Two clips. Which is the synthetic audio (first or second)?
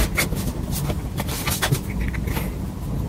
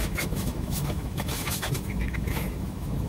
second